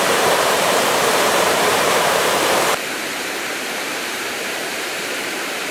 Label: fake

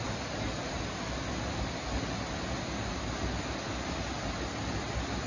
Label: real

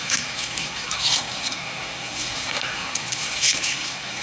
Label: fake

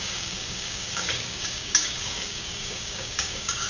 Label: fake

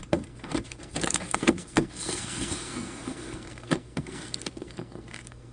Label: fake